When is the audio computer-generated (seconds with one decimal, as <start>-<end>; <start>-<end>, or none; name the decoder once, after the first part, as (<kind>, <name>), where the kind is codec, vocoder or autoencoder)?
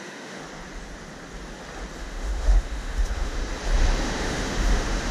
0.0-0.4 (autoencoder, DAC-VAE); 2.0-3.4; 4.0-5.1